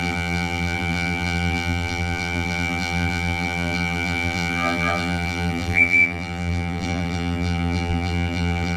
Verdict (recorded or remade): remade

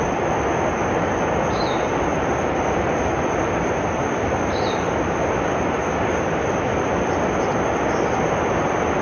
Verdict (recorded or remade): recorded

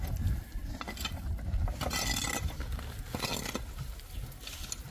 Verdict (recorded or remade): recorded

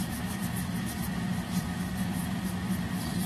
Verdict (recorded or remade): recorded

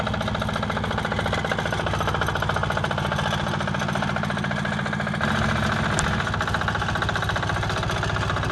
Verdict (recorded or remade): recorded